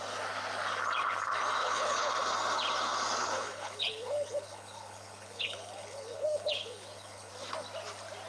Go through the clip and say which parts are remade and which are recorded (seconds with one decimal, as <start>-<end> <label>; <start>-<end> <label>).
0.0-1.6 recorded; 1.6-2.1 remade; 2.1-3.2 recorded; 3.2-7.3 remade; 7.3-8.3 recorded